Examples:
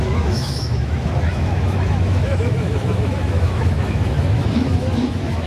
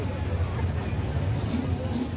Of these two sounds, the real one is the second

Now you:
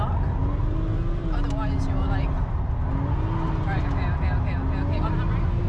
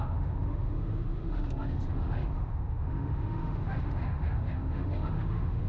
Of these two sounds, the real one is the first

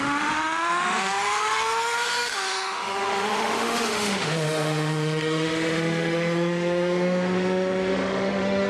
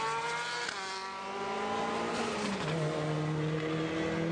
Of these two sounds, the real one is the second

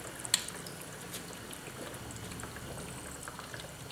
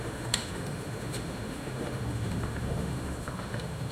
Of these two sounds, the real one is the first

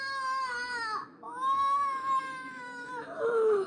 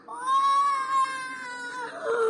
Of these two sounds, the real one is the second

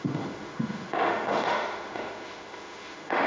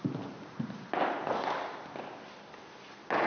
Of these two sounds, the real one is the second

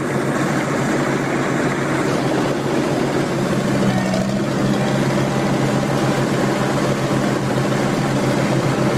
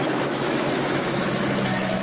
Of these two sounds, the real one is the first